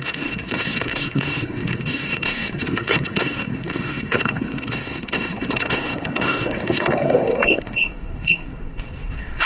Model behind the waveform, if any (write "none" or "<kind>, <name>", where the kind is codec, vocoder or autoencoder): codec, SNAC